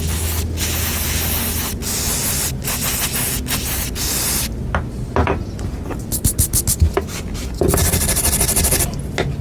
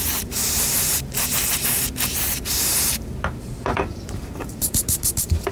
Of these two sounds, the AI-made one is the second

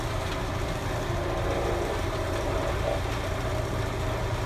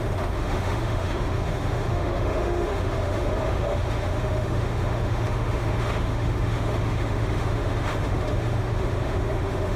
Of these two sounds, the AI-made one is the second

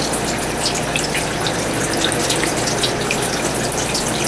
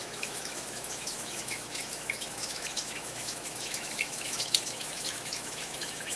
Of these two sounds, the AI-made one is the second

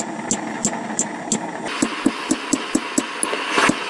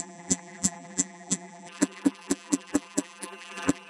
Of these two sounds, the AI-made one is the second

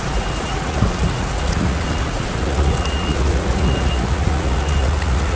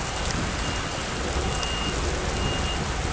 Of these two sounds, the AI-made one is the first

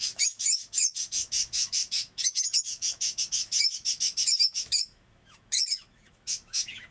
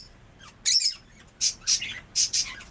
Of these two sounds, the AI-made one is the first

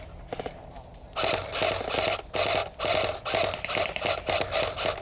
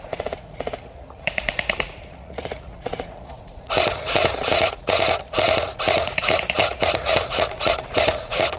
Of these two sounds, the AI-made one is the second